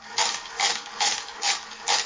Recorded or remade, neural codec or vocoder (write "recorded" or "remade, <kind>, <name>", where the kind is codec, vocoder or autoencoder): remade, codec, DAC